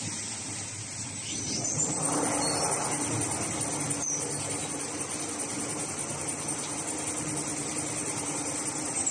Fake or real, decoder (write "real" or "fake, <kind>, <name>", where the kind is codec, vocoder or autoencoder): real